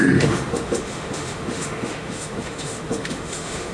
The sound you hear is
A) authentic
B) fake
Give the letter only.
B